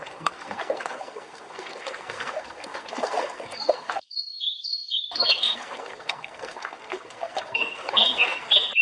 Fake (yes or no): yes